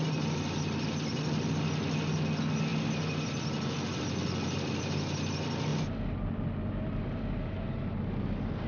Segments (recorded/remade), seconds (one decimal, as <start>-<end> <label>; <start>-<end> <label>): 0.0-8.7 recorded